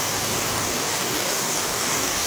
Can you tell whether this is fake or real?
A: fake